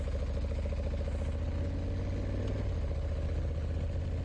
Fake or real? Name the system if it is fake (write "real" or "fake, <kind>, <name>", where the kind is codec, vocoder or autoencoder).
real